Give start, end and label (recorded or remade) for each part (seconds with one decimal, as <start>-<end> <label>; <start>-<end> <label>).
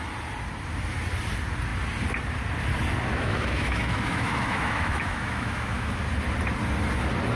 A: 0.0-3.1 recorded; 3.1-6.0 remade; 6.0-7.4 recorded